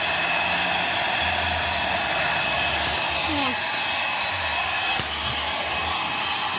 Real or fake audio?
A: real